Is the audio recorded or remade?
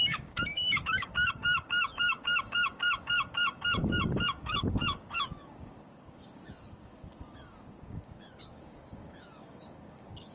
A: remade